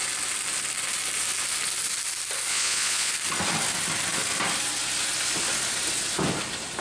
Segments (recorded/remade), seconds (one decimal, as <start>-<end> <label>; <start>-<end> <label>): 0.0-2.5 recorded; 2.5-3.1 remade; 3.1-6.8 recorded